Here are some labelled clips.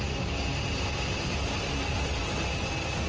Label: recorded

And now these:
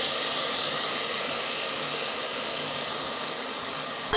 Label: remade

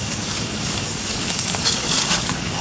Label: remade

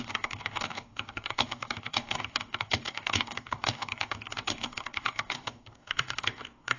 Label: remade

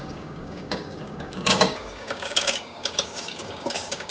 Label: remade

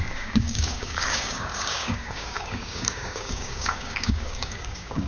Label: remade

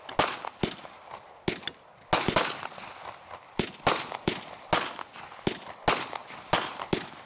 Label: recorded